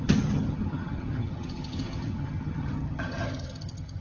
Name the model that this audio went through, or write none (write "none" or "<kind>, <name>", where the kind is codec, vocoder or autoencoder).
vocoder, HiFi-GAN